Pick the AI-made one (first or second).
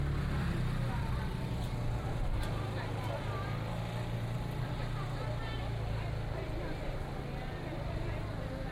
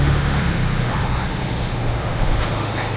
second